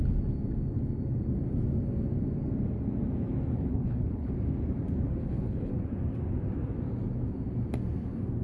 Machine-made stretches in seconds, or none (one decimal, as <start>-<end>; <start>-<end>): 3.7-4.3; 5.2-5.7